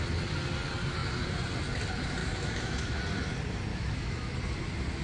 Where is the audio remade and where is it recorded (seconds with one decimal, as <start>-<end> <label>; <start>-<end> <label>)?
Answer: 0.0-2.2 recorded; 2.2-3.0 remade; 3.0-3.7 recorded; 3.7-4.4 remade; 4.4-5.0 recorded